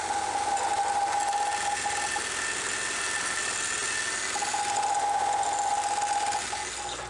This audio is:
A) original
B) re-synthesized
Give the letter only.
A